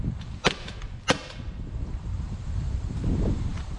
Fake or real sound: real